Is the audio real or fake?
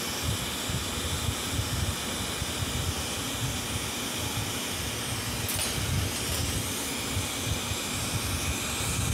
real